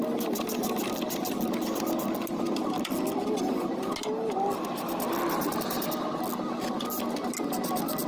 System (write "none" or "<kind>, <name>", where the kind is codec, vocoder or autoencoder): none